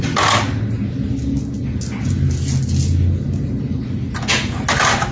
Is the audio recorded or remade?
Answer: recorded